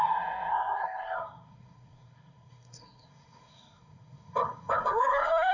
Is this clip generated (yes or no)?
yes